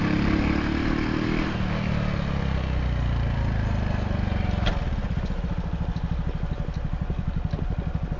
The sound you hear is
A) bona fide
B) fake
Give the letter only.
A